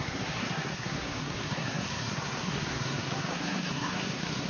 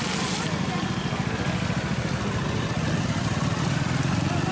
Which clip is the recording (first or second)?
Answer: second